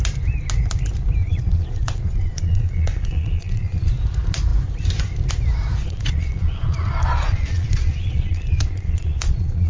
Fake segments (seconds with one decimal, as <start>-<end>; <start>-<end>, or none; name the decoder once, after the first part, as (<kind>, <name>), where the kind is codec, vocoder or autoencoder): 1.2-3.9 (vocoder, Vocos); 5.8-9.7